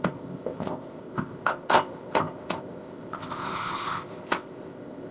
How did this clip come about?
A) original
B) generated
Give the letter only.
B